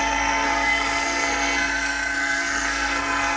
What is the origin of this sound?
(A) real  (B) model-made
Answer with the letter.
B